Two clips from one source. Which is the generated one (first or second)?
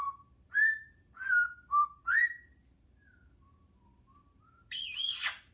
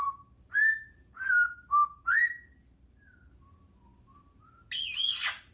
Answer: first